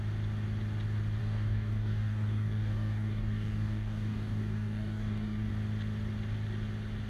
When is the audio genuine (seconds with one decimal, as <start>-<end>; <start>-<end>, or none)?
0.0-1.2; 5.5-7.1